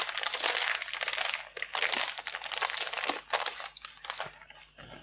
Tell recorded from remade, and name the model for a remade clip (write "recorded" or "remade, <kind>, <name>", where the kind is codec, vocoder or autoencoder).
recorded